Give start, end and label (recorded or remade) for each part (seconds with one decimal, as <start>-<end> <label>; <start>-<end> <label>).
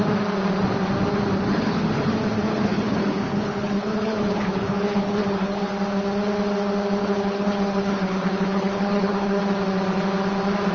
0.0-1.5 recorded; 1.5-2.1 remade; 2.1-2.5 recorded; 2.5-5.7 remade; 5.7-7.0 recorded; 7.0-9.4 remade; 9.4-10.7 recorded